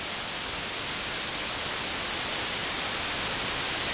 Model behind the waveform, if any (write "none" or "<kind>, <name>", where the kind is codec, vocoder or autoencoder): none